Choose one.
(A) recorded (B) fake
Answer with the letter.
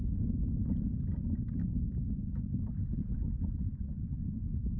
A